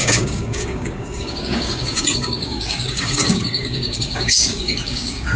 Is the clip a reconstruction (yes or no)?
yes